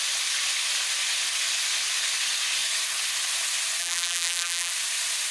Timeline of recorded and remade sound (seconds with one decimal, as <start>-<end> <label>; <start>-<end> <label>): 0.0-3.8 recorded; 3.8-4.7 remade; 4.7-5.3 recorded